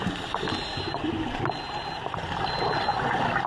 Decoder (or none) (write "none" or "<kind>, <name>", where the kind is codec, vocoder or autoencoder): none